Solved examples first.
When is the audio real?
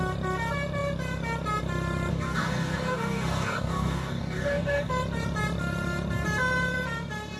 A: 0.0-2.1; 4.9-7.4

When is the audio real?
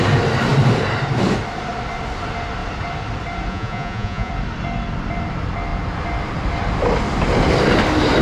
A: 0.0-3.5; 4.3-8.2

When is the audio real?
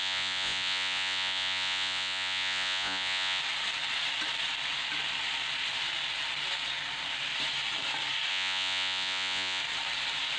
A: 3.4-8.3; 9.6-10.4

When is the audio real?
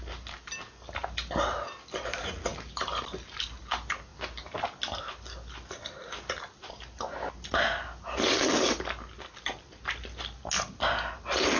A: 0.0-11.6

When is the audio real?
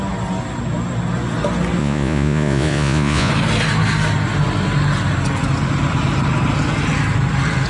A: 0.0-1.8; 3.3-7.7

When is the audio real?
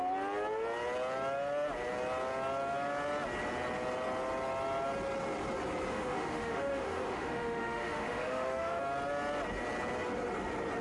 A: 0.0-5.9; 8.8-10.8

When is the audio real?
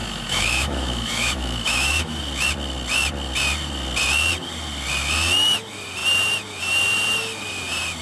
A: 2.2-8.0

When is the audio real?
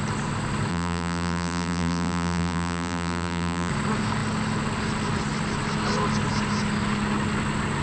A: 0.0-0.7; 3.7-7.8